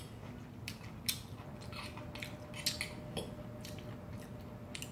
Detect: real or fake real